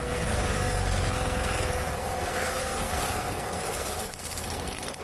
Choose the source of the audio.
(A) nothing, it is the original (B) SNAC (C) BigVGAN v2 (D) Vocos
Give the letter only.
B